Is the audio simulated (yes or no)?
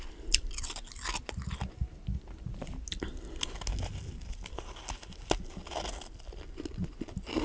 no